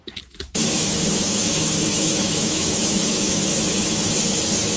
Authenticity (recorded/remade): remade